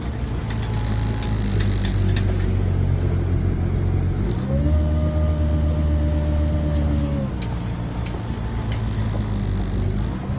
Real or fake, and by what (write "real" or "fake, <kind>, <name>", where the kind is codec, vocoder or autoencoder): real